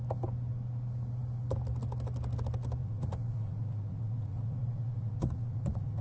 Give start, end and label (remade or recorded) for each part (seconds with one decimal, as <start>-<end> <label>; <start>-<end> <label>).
0.0-2.8 recorded; 2.8-6.0 remade